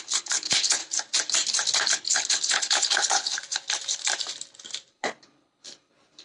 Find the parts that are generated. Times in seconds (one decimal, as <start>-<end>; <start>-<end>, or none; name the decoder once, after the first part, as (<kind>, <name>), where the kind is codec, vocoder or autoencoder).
0.0-0.8 (codec, HILCodec); 1.9-3.4; 4.9-6.2